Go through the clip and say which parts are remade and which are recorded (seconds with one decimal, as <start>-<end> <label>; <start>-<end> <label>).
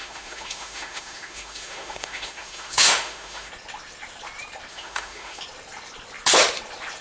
0.0-3.5 remade; 3.5-4.7 recorded; 4.7-5.4 remade; 5.4-7.0 recorded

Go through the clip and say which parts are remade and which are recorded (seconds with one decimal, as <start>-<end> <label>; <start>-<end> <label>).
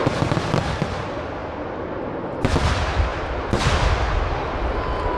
0.0-3.1 recorded; 3.1-3.6 remade; 3.6-5.2 recorded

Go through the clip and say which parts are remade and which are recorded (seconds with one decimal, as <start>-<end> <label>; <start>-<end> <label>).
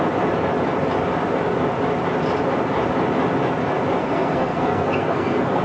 0.0-4.0 recorded; 4.0-5.6 remade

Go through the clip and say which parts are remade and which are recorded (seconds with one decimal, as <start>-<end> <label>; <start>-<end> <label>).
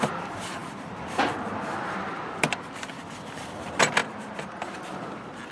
0.0-5.5 remade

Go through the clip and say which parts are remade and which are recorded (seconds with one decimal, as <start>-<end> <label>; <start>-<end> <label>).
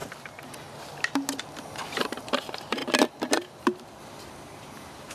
0.0-1.4 recorded; 1.4-2.8 remade; 2.8-4.0 recorded; 4.0-5.1 remade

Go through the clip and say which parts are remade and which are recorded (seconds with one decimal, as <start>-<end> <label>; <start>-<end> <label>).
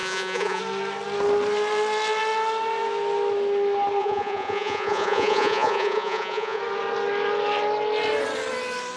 0.0-0.6 remade; 0.6-4.0 recorded; 4.0-6.6 remade; 6.6-9.0 recorded